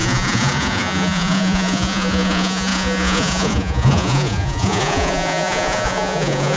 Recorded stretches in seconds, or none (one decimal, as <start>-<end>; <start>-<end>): none

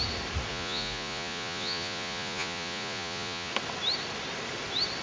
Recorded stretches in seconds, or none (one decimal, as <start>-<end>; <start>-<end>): 0.0-0.5; 3.5-5.0

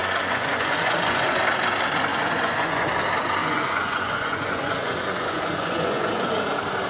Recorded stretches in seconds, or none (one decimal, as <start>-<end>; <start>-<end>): 1.4-2.1; 2.9-3.4; 6.3-6.9

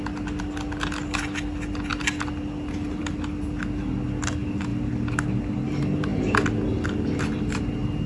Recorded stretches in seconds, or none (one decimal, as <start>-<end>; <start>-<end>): 0.0-8.1